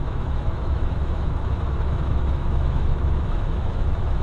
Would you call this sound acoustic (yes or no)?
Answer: no